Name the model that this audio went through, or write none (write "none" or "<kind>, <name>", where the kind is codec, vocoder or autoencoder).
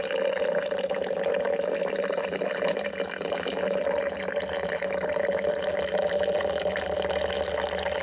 none